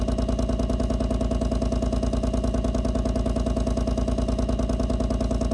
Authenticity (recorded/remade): recorded